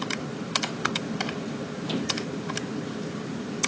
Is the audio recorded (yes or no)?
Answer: no